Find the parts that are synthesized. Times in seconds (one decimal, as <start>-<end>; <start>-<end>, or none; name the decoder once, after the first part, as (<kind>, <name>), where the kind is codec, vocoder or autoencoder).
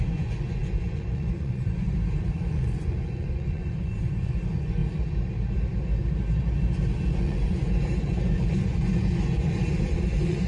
0.0-4.8 (vocoder, Vocos); 7.1-10.5